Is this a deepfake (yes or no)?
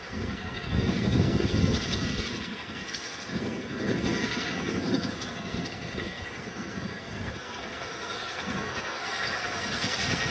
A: yes